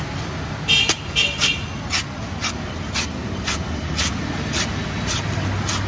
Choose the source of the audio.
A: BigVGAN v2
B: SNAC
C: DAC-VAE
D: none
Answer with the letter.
D